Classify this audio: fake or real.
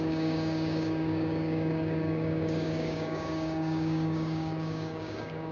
fake